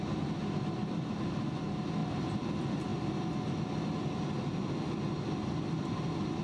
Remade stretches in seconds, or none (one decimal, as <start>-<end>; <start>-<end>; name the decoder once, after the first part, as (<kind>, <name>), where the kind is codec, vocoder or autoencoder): 0.8-1.6 (vocoder, BigVGAN v2); 2.0-2.5